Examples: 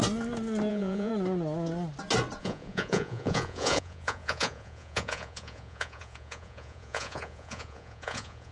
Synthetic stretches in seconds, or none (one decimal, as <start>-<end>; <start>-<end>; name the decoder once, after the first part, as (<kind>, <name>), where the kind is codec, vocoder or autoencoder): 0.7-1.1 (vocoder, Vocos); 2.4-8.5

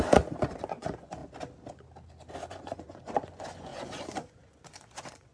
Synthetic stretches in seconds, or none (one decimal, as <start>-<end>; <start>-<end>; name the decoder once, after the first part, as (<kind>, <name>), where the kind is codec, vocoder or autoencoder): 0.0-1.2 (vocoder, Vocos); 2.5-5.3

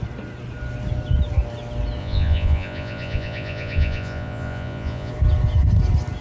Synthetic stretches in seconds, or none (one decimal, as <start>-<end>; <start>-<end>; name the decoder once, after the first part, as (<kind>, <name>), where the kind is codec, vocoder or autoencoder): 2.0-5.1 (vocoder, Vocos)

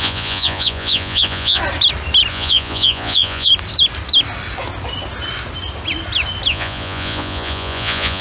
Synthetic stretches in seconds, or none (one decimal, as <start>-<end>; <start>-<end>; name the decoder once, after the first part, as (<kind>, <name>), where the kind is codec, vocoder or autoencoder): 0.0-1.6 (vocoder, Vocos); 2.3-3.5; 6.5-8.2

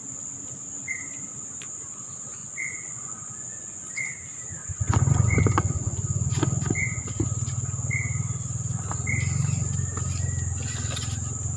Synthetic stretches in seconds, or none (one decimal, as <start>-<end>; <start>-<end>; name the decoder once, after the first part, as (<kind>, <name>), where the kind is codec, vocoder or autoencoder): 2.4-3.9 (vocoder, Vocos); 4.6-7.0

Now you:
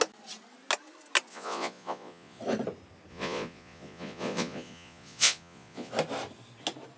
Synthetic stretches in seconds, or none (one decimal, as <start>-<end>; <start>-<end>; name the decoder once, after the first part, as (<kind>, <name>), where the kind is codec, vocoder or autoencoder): 1.3-2.4 (vocoder, Vocos); 3.1-5.9

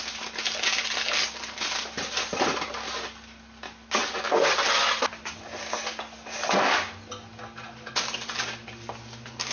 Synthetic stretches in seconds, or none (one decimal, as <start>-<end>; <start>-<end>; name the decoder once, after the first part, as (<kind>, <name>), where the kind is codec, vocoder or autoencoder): none